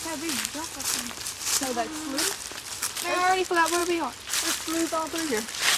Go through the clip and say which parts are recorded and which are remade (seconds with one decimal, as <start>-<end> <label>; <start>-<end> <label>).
0.0-5.8 recorded